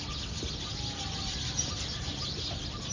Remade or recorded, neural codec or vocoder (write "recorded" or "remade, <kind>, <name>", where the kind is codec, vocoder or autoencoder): recorded